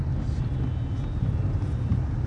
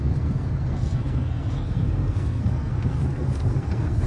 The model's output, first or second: second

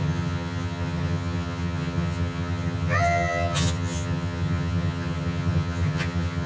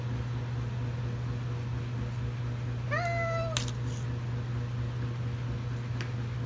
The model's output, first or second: first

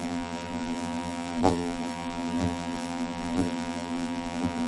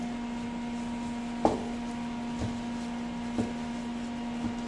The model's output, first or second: first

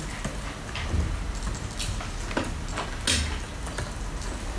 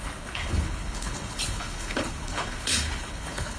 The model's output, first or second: second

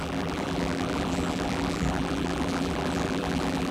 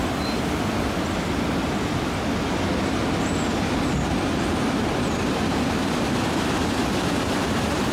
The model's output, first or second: first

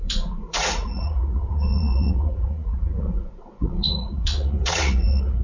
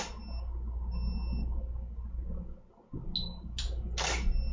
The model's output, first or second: first